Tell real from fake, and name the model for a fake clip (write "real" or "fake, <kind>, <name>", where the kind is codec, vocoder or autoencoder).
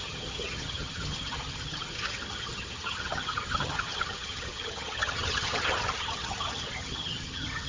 fake, vocoder, HiFi-GAN